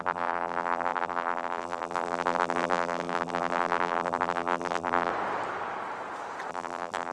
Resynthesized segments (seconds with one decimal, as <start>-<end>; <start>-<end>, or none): 0.0-5.1; 6.5-7.1